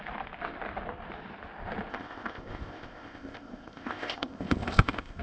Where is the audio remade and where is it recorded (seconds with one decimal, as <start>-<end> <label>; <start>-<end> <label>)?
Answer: 0.0-1.9 recorded; 1.9-5.2 remade